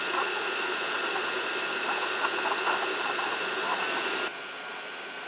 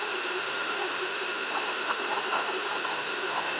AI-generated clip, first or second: second